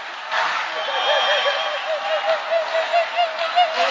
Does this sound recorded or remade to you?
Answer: recorded